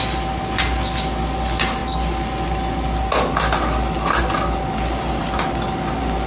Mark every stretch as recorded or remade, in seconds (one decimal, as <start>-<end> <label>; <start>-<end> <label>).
0.0-6.3 recorded